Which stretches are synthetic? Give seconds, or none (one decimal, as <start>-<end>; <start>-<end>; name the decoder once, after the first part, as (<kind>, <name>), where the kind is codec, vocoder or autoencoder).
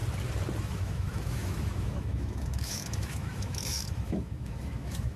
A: 0.6-5.2 (autoencoder, DAC-VAE)